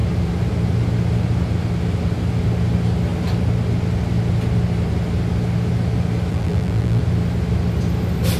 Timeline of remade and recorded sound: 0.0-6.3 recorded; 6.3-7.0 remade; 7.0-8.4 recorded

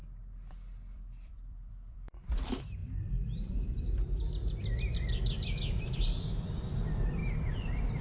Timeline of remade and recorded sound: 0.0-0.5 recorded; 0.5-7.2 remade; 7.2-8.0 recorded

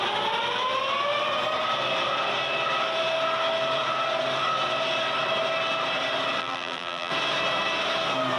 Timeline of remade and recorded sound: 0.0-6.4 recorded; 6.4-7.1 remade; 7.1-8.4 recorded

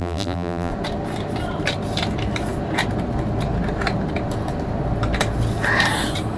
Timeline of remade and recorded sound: 0.0-0.7 remade; 0.7-6.4 recorded